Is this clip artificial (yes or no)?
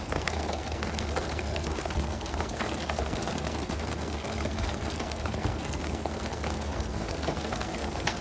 yes